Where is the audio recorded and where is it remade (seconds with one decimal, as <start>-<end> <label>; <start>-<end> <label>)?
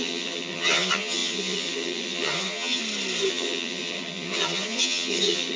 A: 0.0-2.8 remade; 2.8-3.3 recorded; 3.3-5.6 remade